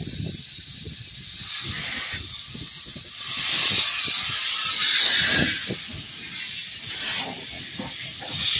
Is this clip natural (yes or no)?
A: yes